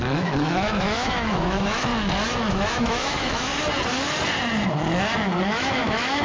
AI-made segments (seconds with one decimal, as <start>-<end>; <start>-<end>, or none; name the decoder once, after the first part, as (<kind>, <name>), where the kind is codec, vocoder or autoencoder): 0.0-1.9 (autoencoder, DAC-VAE); 2.5-3.5; 5.4-6.2